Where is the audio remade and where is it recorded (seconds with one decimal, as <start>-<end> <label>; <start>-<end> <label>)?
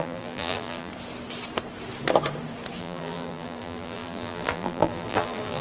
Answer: 0.0-0.9 remade; 0.9-2.8 recorded; 2.8-5.6 remade